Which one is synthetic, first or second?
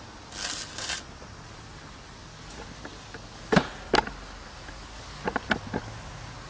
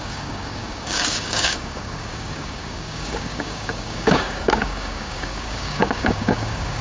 second